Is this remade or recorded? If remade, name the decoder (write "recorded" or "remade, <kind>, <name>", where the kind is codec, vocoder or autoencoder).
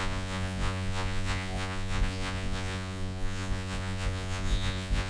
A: remade, vocoder, Vocos